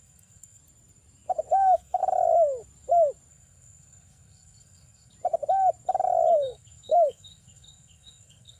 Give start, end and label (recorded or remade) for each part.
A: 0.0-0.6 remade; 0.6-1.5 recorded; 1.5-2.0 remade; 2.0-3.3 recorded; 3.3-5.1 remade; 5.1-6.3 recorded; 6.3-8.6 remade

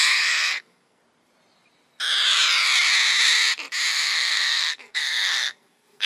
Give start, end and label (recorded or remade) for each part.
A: 0.0-1.0 remade; 1.0-3.9 recorded; 3.9-6.1 remade

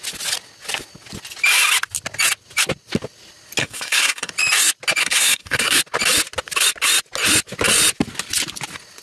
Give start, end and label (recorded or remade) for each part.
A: 0.0-3.6 recorded; 3.6-4.3 remade; 4.3-5.0 recorded; 5.0-5.8 remade; 5.8-9.0 recorded

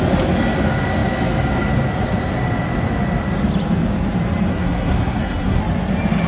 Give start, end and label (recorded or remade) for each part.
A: 0.0-4.5 recorded; 4.5-5.6 remade; 5.6-6.3 recorded

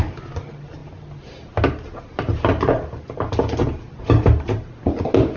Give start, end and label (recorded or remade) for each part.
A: 0.0-5.4 recorded

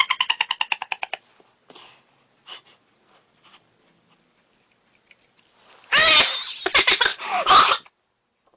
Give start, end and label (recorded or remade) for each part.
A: 0.0-8.6 recorded

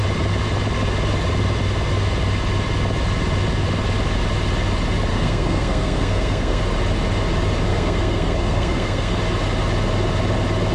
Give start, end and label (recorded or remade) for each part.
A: 0.0-5.1 recorded; 5.1-6.6 remade; 6.6-7.7 recorded; 7.7-9.2 remade; 9.2-10.7 recorded